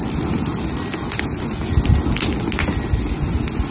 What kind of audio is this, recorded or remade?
recorded